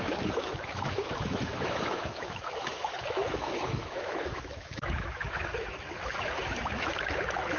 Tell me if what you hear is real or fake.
fake